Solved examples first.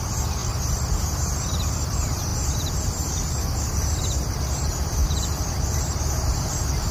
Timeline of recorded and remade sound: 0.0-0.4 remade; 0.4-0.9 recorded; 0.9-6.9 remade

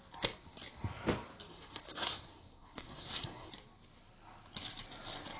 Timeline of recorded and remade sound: 0.0-1.5 recorded; 1.5-3.5 remade; 3.5-5.4 recorded

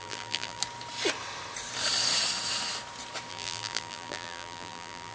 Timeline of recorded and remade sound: 0.0-0.6 remade; 0.6-3.3 recorded; 3.3-5.1 remade

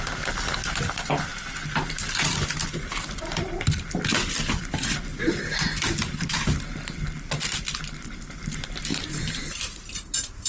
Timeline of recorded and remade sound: 0.0-5.1 recorded; 5.1-6.5 remade; 6.5-8.9 recorded; 8.9-9.5 remade; 9.5-10.5 recorded

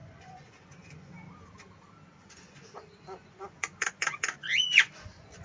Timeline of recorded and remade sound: 0.0-1.1 remade; 1.1-2.1 recorded; 2.1-5.4 remade

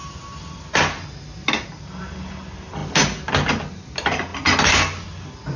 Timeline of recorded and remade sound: 0.0-5.6 recorded

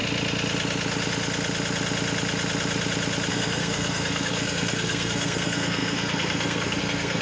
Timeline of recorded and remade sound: 0.0-3.3 recorded; 3.3-7.2 remade

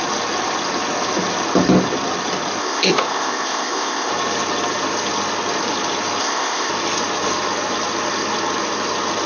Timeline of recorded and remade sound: 0.0-2.6 recorded; 2.6-4.1 remade; 4.1-6.2 recorded; 6.2-6.7 remade; 6.7-9.3 recorded